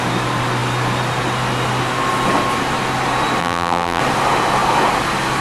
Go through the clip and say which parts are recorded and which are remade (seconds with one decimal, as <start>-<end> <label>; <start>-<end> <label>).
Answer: 0.0-3.4 recorded; 3.4-4.0 remade; 4.0-5.4 recorded

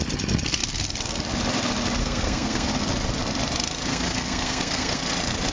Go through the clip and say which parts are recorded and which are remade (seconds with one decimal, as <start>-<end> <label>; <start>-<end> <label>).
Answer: 0.0-2.0 recorded; 2.0-2.7 remade; 2.7-3.9 recorded; 3.9-5.0 remade; 5.0-5.5 recorded